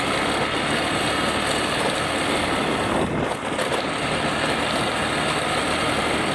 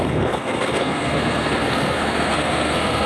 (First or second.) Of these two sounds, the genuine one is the first